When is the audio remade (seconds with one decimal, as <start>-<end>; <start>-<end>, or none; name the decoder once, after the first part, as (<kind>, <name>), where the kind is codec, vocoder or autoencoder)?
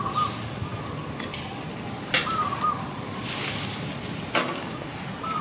4.4-5.0 (codec, DAC)